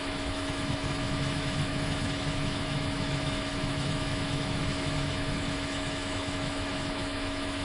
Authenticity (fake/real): fake